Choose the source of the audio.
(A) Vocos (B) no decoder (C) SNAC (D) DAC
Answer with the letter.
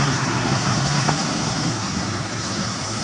C